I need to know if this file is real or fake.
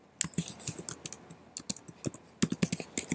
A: real